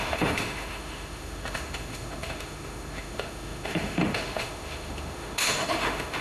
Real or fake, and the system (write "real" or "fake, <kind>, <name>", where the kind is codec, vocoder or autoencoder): fake, autoencoder, DAC-VAE